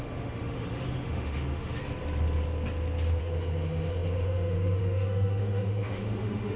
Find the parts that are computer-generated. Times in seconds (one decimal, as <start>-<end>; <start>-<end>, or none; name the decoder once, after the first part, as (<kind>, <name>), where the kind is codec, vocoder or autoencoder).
0.0-1.8 (autoencoder, DAC-VAE); 3.2-6.6